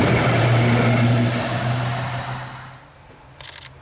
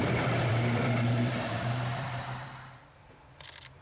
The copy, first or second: second